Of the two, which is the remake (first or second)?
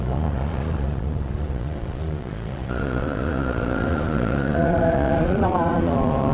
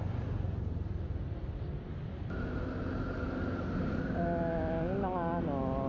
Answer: first